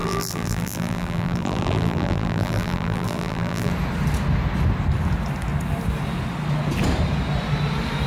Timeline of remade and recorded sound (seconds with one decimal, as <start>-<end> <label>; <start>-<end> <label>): 0.0-3.7 remade; 3.7-8.1 recorded